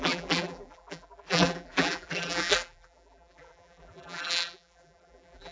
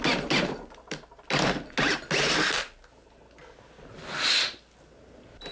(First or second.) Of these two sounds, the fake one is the first